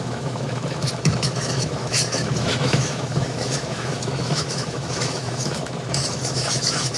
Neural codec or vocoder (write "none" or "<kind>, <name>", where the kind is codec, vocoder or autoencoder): autoencoder, DAC-VAE